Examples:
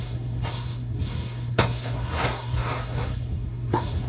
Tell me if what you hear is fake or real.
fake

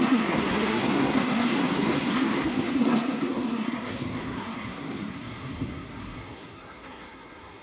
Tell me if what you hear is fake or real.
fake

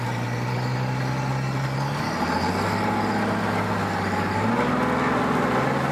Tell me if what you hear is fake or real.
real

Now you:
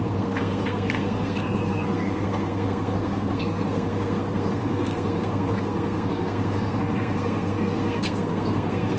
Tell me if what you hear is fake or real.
fake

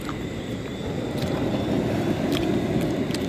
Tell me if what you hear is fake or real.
real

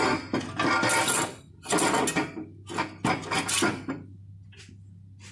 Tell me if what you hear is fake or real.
real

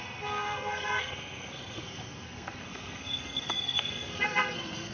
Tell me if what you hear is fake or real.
fake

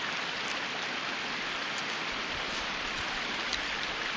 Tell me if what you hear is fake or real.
real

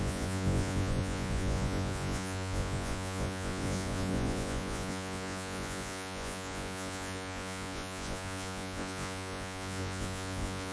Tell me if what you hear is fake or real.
fake